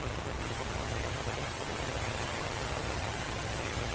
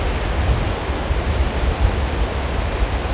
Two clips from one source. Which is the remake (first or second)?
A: first